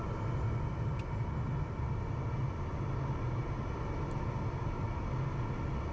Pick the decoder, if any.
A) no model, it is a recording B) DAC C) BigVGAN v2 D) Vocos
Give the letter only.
A